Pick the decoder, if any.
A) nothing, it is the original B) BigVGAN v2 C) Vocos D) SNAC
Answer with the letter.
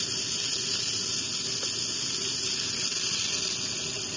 A